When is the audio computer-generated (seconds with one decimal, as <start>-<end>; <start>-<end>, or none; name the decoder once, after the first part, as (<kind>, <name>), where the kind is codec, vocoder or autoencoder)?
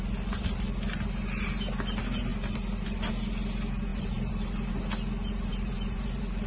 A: 2.3-3.1 (vocoder, BigVGAN v2); 3.9-4.7; 5.5-6.5